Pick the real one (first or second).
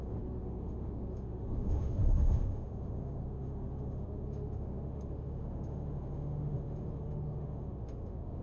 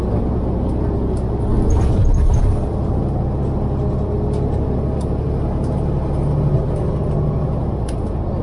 second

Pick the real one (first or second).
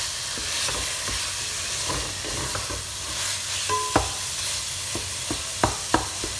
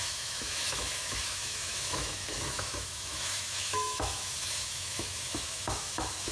first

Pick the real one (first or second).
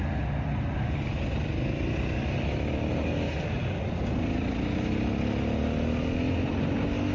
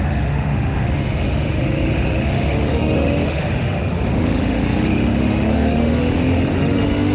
first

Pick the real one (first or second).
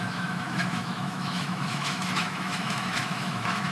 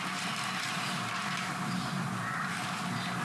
second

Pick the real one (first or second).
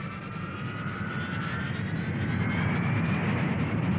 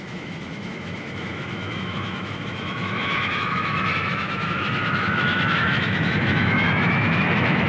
first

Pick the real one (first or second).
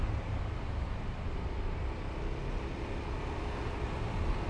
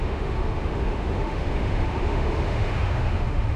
first